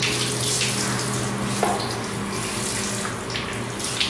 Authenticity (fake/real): real